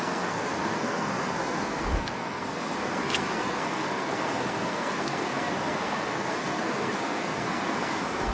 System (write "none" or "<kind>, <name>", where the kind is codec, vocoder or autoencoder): codec, SNAC